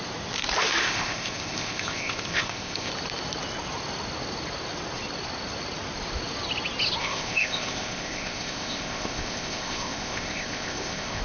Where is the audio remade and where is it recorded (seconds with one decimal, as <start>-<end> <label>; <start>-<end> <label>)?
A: 0.0-0.8 recorded; 0.8-2.9 remade; 2.9-7.0 recorded; 7.0-11.2 remade